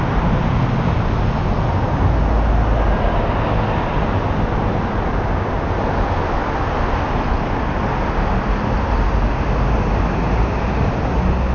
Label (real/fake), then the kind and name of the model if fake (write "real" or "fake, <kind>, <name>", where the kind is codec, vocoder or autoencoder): real